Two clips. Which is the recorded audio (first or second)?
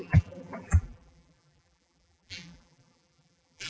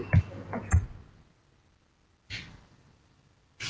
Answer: second